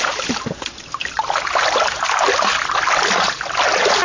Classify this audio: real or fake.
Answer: real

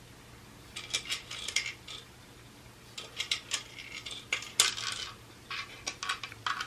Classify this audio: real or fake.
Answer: real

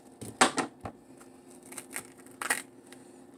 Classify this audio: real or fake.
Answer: real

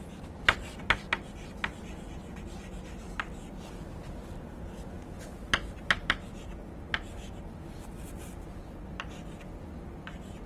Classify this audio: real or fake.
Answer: real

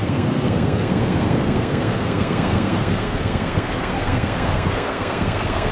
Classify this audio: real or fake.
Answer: fake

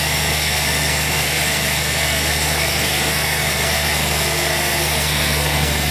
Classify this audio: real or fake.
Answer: fake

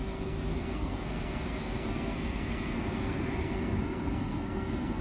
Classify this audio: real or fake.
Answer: fake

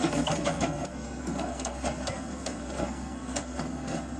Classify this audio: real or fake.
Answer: fake